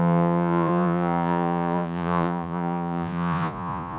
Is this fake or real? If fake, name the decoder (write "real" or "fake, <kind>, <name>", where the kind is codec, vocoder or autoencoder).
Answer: fake, vocoder, Vocos